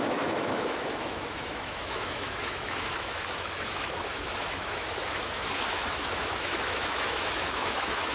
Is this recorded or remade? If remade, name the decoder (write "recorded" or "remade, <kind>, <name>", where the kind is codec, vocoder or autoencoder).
remade, autoencoder, DAC-VAE